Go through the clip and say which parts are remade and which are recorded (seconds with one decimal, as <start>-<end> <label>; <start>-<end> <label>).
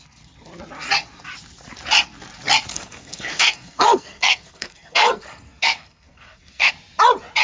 0.0-2.7 recorded; 2.7-6.7 remade; 6.7-7.4 recorded